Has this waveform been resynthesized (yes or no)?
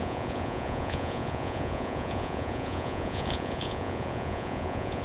yes